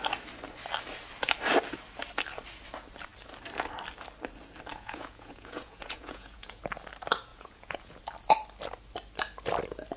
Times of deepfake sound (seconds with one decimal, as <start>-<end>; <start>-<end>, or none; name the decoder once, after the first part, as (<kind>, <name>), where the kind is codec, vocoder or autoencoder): 4.7-6.6 (vocoder, Vocos); 7.3-8.0